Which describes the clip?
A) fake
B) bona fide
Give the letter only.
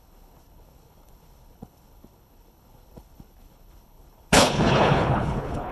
A